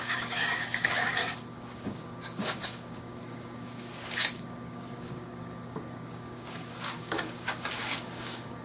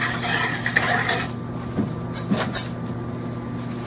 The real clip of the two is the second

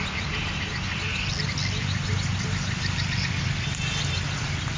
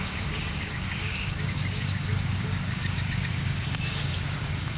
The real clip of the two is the first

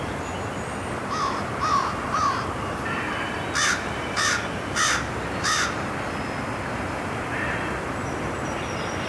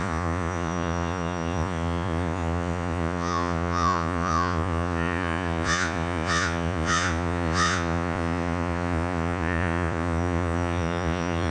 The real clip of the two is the first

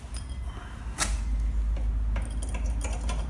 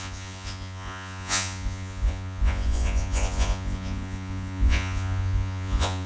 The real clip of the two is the first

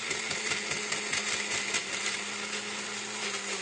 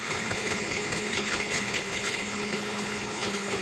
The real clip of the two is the first